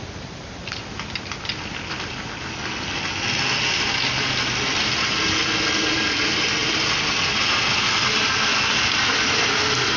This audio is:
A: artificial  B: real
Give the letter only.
B